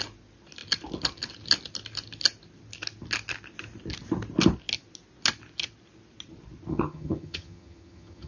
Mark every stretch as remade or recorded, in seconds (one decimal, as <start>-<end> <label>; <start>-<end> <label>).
0.0-6.7 recorded; 6.7-8.3 remade